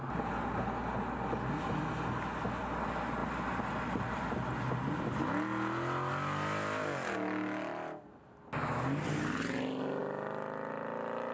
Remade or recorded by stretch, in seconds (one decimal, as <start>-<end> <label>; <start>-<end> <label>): 0.0-11.3 recorded